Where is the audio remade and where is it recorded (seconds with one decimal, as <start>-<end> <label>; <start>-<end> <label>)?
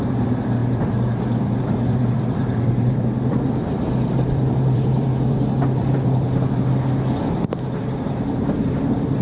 0.0-9.2 remade